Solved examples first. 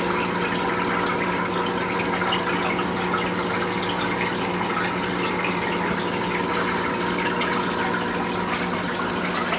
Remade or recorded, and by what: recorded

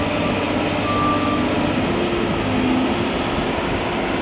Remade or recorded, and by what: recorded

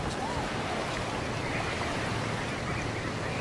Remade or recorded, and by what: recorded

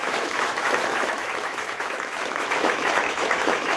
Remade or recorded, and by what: remade, autoencoder, DAC-VAE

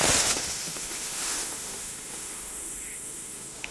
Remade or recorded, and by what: remade, autoencoder, DAC-VAE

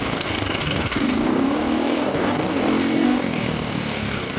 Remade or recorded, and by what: remade, codec, DAC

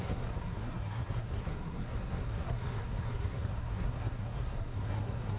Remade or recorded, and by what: remade, codec, SNAC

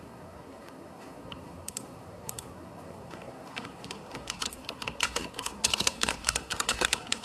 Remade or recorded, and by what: remade, codec, SNAC